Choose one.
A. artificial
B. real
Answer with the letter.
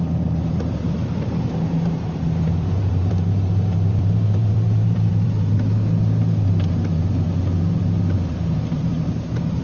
A